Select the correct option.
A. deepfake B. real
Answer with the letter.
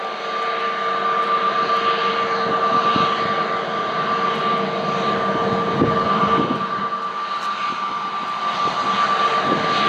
B